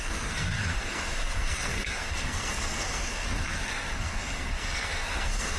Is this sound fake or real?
fake